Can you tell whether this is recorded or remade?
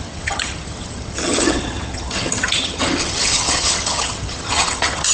remade